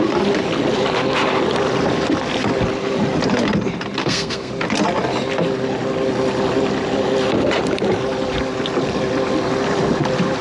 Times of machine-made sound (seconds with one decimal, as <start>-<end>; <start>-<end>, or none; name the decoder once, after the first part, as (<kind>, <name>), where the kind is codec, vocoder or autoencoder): 4.0-4.5 (codec, SNAC)